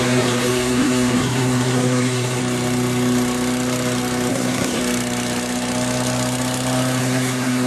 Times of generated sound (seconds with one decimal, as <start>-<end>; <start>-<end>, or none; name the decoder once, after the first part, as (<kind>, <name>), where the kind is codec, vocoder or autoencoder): 0.0-2.4 (codec, SNAC); 4.3-4.8; 7.0-7.7